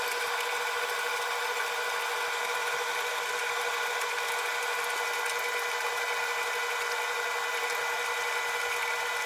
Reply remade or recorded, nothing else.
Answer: recorded